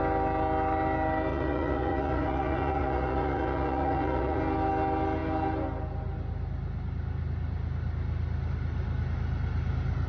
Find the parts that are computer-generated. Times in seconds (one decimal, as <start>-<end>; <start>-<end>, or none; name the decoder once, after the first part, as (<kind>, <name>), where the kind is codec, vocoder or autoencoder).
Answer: 1.3-4.4 (vocoder, Vocos)